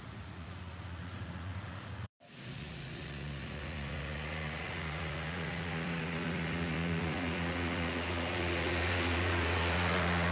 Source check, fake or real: fake